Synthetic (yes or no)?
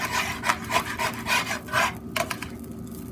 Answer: no